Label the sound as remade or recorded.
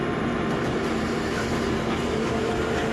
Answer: remade